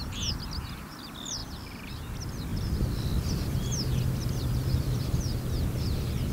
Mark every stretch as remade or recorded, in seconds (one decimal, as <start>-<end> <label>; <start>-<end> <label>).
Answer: 0.0-1.4 recorded; 1.4-1.9 remade; 1.9-2.5 recorded; 2.5-5.2 remade; 5.2-6.3 recorded